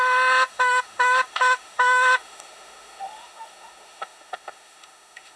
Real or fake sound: fake